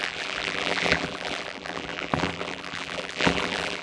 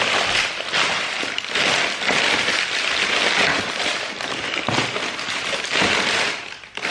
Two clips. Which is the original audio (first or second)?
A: second